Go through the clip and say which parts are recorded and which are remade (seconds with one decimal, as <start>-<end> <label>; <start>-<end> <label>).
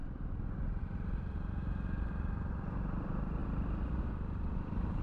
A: 0.0-2.5 recorded; 2.5-5.0 remade